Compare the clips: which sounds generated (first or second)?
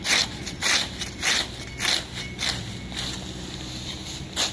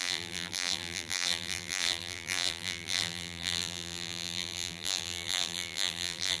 second